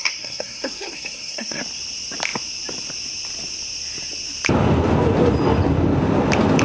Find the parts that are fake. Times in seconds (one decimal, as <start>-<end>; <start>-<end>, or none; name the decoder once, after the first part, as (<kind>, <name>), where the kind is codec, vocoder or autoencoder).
0.0-1.6 (codec, SNAC)